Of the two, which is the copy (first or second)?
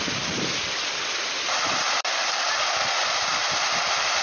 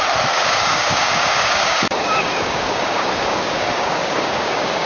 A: second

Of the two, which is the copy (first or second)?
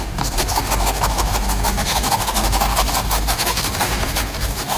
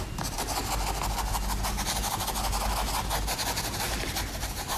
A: first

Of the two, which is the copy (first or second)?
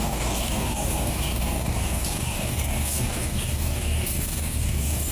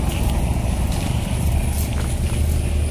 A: first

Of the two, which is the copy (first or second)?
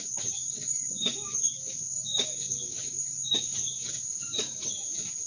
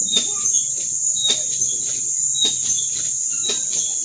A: first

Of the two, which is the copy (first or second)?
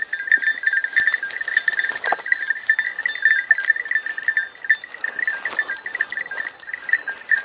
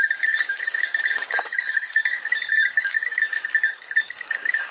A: second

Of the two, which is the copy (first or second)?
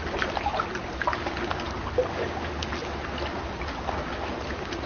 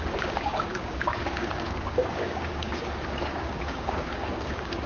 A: second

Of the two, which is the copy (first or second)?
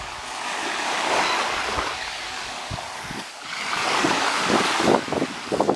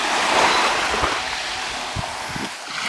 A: first